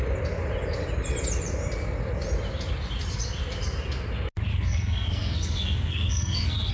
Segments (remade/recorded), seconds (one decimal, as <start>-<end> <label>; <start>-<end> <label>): 0.0-4.5 recorded; 4.5-6.7 remade